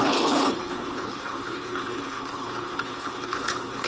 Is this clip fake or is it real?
fake